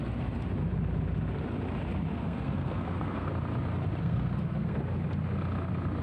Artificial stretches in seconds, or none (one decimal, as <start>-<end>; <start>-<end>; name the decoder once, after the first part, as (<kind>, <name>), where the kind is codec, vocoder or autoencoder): 2.1-3.3 (codec, SNAC); 4.0-4.8